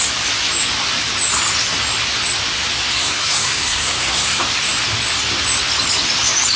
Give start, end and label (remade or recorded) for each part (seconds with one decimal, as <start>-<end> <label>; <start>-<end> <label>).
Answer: 0.0-2.9 recorded; 2.9-4.4 remade; 4.4-6.6 recorded